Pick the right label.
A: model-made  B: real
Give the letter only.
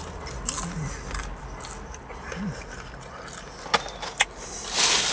B